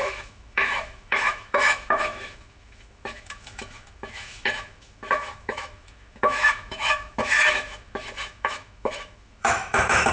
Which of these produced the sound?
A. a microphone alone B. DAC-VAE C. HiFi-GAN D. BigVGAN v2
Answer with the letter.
B